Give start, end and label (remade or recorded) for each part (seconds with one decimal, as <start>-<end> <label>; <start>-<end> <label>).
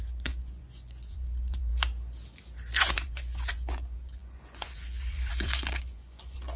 0.0-1.7 remade; 1.7-2.8 recorded; 2.8-6.6 remade